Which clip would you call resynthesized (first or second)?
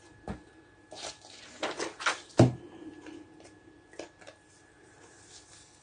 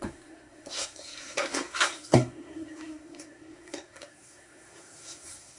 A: second